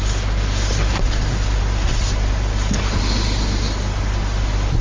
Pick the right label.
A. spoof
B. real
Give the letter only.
B